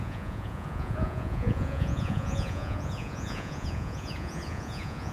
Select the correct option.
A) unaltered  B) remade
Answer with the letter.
B